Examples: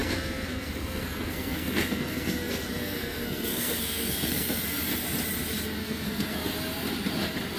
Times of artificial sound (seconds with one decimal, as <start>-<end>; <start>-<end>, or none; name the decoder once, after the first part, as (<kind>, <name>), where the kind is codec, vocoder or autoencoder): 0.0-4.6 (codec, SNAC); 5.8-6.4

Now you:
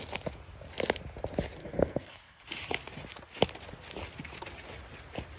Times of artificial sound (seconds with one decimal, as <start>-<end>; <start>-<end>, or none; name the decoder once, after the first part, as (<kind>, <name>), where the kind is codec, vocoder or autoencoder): 1.6-2.4 (codec, SNAC)

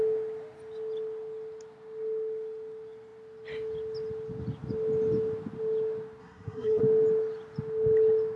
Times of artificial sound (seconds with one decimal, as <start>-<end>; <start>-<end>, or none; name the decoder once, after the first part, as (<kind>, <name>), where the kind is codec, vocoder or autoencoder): 6.2-6.8 (codec, SNAC)